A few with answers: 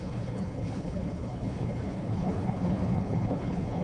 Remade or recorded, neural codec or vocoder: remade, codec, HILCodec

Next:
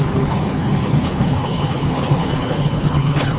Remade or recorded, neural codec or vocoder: remade, codec, HILCodec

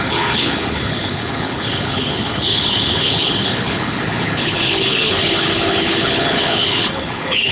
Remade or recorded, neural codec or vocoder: remade, codec, HILCodec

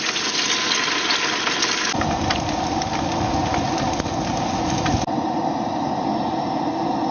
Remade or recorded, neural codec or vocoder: recorded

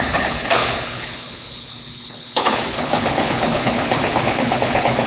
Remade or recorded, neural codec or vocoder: remade, codec, HILCodec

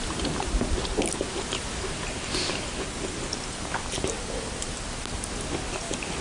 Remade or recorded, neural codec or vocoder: recorded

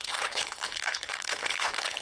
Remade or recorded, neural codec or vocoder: remade, codec, HILCodec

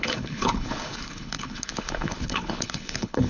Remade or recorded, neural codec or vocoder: remade, codec, HILCodec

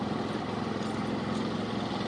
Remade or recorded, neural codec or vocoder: recorded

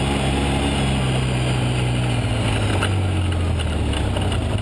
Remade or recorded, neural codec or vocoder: recorded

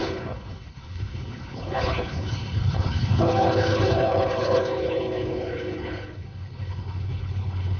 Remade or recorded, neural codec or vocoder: remade, codec, HILCodec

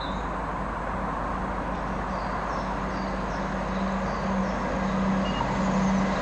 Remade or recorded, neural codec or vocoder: recorded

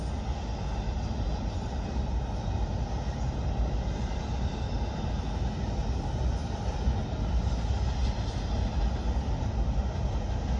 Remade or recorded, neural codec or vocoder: recorded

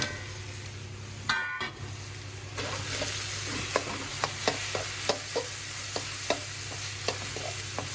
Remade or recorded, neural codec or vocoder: recorded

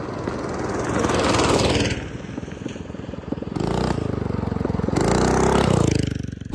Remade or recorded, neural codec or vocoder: recorded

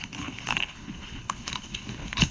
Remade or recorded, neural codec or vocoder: remade, codec, HILCodec